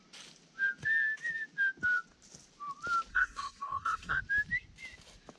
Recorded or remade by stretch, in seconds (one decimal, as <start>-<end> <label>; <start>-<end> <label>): 0.0-3.1 recorded; 3.1-4.2 remade; 4.2-5.4 recorded